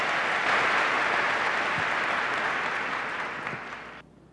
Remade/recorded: recorded